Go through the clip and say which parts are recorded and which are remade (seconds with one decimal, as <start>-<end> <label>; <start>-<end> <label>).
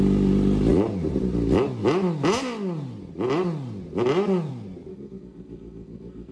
0.0-4.9 recorded; 4.9-6.3 remade